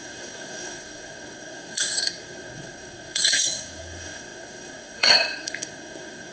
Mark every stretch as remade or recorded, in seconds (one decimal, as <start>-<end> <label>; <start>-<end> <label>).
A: 0.0-6.3 remade